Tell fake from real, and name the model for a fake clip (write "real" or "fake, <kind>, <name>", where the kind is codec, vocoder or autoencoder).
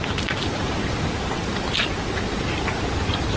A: real